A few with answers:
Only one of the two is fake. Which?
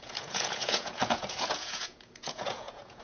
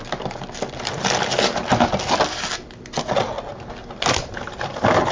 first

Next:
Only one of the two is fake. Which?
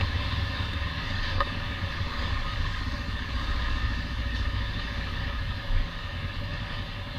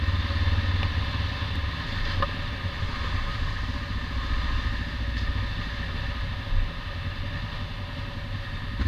first